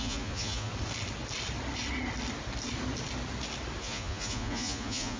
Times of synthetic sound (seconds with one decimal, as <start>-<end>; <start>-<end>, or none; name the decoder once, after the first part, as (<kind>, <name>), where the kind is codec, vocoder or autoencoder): 0.0-0.7 (vocoder, Vocos); 3.8-5.2